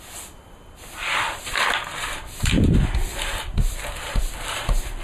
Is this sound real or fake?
fake